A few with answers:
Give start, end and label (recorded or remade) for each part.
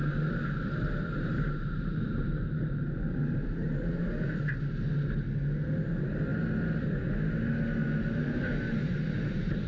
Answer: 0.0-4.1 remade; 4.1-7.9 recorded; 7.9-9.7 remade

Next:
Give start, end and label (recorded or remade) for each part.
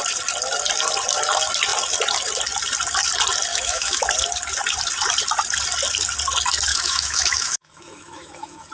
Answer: 0.0-3.5 recorded; 3.5-4.0 remade; 4.0-6.7 recorded; 6.7-8.7 remade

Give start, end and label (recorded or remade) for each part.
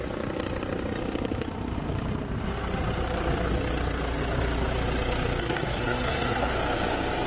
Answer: 0.0-5.4 recorded; 5.4-6.5 remade; 6.5-7.3 recorded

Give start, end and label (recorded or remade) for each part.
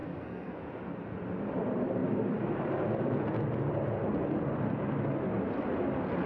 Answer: 0.0-0.6 remade; 0.6-6.3 recorded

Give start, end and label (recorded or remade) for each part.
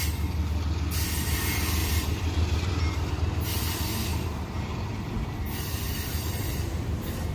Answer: 0.0-1.8 recorded; 1.8-3.1 remade; 3.1-4.1 recorded; 4.1-5.3 remade; 5.3-6.1 recorded; 6.1-7.3 remade